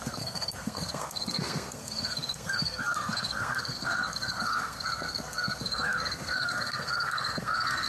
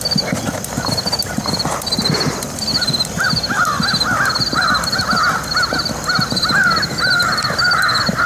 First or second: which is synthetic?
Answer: first